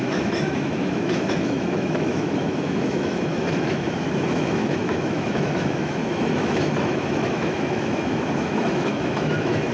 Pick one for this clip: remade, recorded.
remade